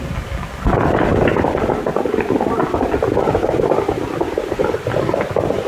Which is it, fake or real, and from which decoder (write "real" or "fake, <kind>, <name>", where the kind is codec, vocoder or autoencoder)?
real